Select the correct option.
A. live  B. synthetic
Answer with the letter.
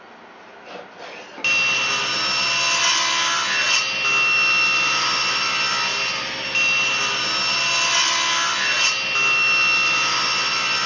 A